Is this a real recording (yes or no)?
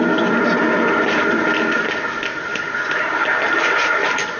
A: yes